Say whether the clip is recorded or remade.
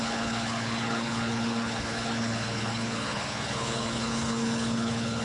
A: remade